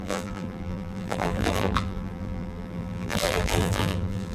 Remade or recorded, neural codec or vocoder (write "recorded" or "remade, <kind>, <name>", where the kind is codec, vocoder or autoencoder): remade, vocoder, BigVGAN v2